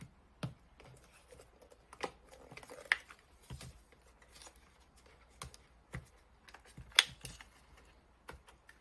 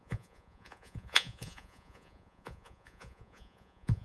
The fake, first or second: second